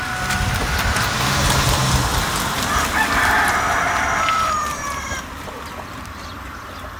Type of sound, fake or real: fake